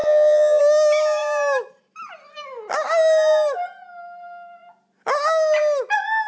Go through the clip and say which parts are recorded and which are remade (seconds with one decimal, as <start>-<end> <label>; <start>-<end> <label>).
0.0-0.6 remade; 0.6-6.3 recorded